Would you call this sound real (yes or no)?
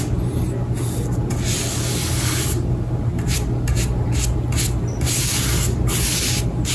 yes